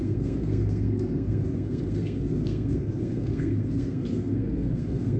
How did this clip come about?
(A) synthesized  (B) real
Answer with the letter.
A